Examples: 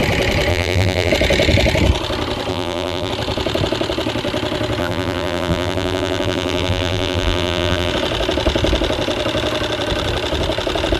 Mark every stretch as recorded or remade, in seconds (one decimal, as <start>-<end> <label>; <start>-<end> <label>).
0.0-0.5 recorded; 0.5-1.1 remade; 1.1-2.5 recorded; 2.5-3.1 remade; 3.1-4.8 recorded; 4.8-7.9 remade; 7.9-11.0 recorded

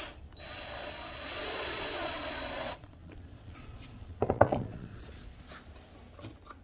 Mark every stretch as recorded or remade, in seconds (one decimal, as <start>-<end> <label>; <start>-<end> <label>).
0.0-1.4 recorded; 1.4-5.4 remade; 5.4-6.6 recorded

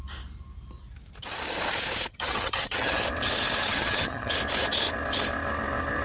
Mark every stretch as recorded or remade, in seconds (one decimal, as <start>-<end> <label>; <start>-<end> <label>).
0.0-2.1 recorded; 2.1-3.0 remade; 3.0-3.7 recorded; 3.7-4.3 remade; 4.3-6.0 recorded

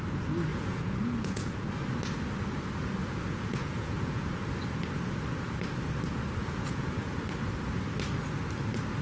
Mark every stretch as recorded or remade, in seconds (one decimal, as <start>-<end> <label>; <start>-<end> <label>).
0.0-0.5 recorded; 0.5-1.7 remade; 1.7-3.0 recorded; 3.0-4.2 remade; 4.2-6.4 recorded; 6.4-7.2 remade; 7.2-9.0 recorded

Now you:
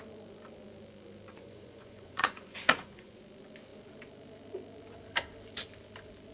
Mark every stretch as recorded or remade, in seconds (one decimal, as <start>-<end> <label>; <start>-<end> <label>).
0.0-1.3 recorded; 1.3-3.2 remade; 3.2-6.3 recorded

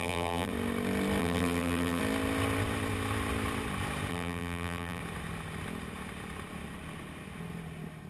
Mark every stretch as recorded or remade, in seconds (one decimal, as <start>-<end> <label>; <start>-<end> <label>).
0.0-0.5 remade; 0.5-1.2 recorded; 1.2-2.0 remade; 2.0-4.1 recorded; 4.1-5.0 remade; 5.0-8.1 recorded

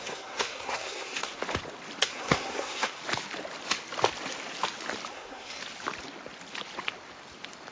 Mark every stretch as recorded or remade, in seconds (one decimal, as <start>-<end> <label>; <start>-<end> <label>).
0.0-1.4 remade; 1.4-2.0 recorded; 2.0-3.0 remade; 3.0-5.1 recorded; 5.1-5.6 remade; 5.6-7.7 recorded

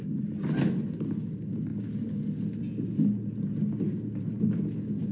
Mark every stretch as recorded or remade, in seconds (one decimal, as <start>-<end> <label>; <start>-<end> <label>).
0.0-5.1 recorded